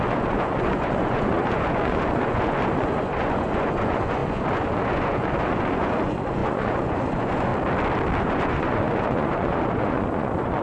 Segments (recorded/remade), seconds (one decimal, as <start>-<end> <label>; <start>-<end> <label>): 0.0-7.5 remade; 7.5-8.2 recorded; 8.2-10.6 remade